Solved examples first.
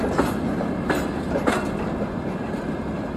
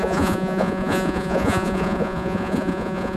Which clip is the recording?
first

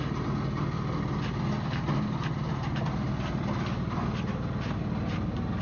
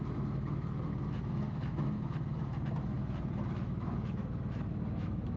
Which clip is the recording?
first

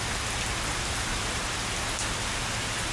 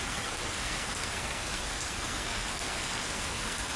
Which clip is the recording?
first